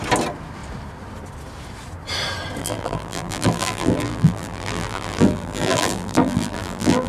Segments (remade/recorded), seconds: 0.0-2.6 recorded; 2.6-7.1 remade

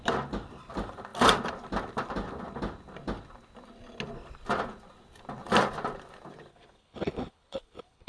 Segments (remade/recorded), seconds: 0.0-6.5 recorded; 6.5-8.1 remade

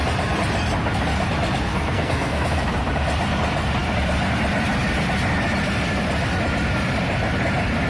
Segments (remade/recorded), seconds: 0.0-1.7 recorded; 1.7-2.6 remade; 2.6-7.9 recorded

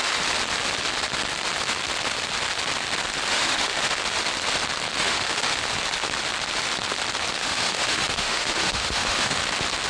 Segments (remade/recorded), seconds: 0.0-3.3 recorded; 3.3-4.0 remade; 4.0-5.0 recorded; 5.0-5.6 remade; 5.6-7.4 recorded; 7.4-9.4 remade; 9.4-9.9 recorded